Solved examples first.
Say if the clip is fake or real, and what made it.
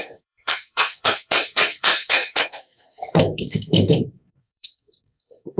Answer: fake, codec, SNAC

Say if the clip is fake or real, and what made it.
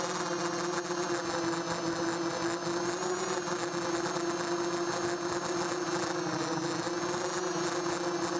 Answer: real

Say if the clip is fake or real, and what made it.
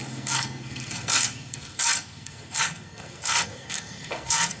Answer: fake, codec, SNAC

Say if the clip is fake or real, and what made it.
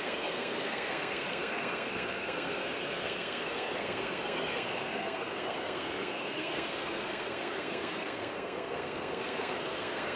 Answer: fake, codec, SNAC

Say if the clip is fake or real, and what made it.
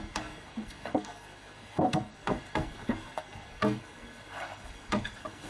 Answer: fake, codec, SNAC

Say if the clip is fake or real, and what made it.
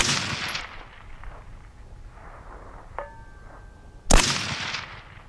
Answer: real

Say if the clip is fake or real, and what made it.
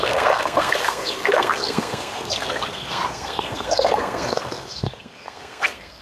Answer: fake, codec, SNAC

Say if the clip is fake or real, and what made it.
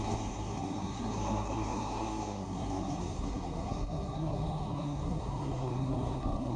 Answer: fake, codec, SNAC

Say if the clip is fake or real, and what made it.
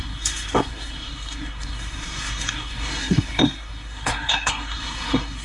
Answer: fake, codec, SNAC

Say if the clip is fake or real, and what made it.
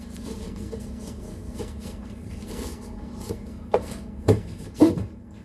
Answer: fake, codec, SNAC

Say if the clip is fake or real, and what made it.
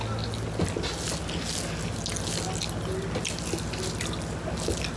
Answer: real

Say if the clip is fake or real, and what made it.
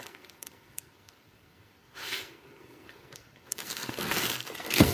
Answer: fake, codec, SNAC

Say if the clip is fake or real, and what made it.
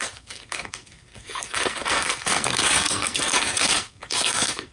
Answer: fake, codec, SNAC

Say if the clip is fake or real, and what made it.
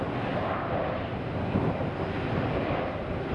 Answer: real